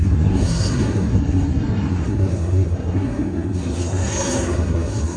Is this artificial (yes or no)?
yes